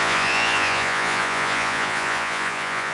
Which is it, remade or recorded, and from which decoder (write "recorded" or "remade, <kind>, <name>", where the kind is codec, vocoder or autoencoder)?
remade, vocoder, Vocos